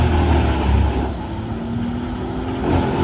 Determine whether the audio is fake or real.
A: real